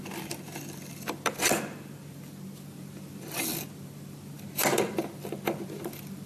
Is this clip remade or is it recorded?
remade